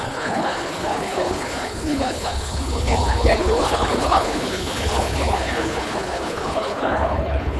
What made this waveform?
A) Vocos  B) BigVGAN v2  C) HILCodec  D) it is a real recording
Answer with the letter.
C